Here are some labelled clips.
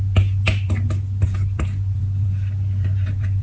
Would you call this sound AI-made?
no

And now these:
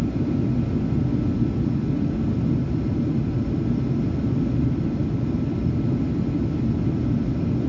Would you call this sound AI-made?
no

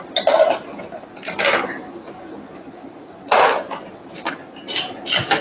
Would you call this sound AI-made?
no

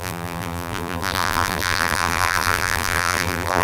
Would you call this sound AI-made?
yes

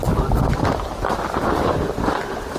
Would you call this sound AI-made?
no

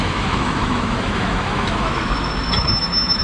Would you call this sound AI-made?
yes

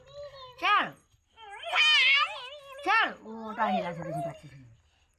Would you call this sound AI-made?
no